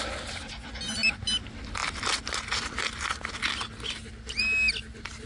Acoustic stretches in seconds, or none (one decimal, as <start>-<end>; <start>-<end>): 0.0-5.3

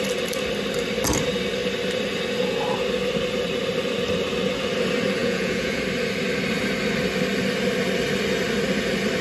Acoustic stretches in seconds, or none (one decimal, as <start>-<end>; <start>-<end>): 0.0-5.2; 5.8-9.2

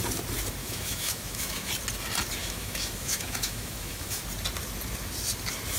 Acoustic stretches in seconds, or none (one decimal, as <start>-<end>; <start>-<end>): 0.0-0.6; 1.7-2.4; 4.2-5.8

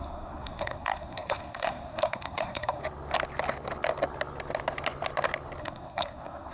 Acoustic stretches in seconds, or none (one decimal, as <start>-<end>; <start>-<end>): 2.8-5.6

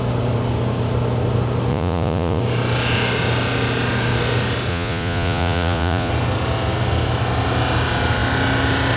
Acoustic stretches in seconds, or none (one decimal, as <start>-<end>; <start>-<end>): 0.0-1.7; 2.4-4.7; 6.1-9.0

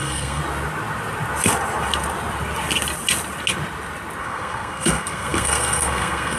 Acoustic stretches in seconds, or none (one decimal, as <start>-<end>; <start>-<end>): 0.4-4.2